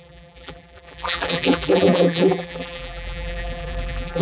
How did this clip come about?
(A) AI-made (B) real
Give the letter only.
A